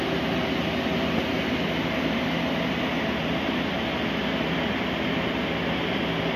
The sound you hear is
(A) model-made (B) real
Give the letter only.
B